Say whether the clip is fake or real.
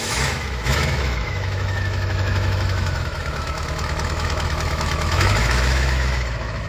fake